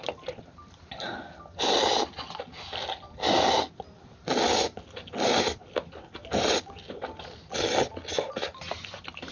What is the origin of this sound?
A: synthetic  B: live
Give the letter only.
B